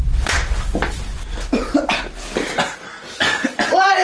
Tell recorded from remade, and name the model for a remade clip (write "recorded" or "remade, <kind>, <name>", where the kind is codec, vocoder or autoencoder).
remade, vocoder, BigVGAN v2